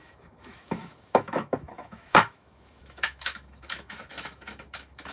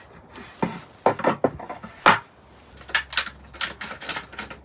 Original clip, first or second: second